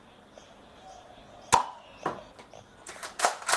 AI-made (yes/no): no